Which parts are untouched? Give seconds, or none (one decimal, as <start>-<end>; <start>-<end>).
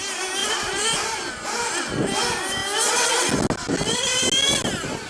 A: 0.0-5.1